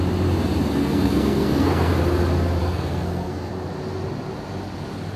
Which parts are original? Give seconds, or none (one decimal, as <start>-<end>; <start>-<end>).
0.0-0.8; 1.9-2.6; 3.5-5.2